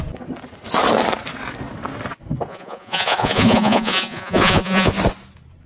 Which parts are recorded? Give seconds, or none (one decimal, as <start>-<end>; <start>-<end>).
0.0-2.5; 4.9-5.7